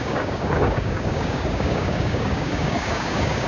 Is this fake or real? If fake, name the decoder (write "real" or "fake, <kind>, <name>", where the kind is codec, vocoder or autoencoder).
fake, codec, DAC